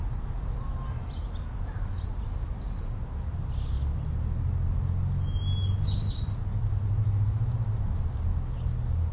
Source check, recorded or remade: recorded